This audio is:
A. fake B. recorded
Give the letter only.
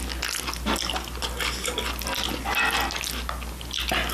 B